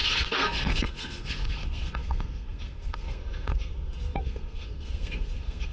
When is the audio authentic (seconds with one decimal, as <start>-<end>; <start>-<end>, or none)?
none